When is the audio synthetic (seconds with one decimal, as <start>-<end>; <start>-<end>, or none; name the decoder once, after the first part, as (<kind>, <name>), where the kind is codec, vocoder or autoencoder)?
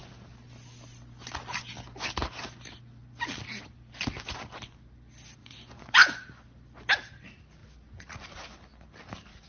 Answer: 5.4-6.2 (vocoder, Vocos)